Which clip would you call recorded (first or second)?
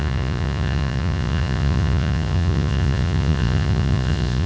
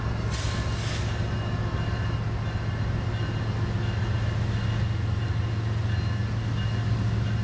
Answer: second